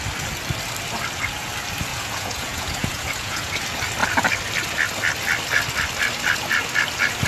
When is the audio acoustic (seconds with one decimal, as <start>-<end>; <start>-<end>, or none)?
0.0-1.9; 3.5-7.3